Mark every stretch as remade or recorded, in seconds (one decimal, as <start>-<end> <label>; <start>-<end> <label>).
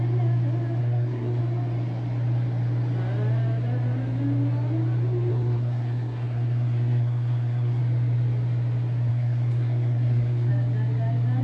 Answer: 0.0-0.8 recorded; 0.8-1.4 remade; 1.4-5.3 recorded; 5.3-7.8 remade; 7.8-9.1 recorded; 9.1-10.5 remade; 10.5-11.4 recorded